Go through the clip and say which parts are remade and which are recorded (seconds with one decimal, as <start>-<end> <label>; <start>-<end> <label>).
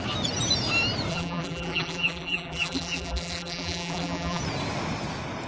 0.0-1.1 recorded; 1.1-4.4 remade; 4.4-5.5 recorded